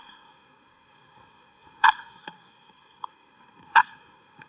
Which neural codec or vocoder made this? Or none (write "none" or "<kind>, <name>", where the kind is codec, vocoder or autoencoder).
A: codec, SNAC